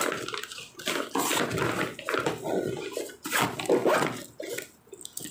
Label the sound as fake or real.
real